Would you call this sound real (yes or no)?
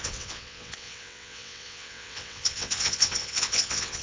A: no